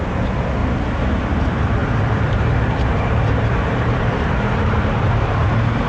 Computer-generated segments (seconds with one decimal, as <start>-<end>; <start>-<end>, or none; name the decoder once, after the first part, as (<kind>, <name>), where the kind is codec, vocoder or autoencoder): 0.0-0.6 (vocoder, BigVGAN v2); 1.3-5.9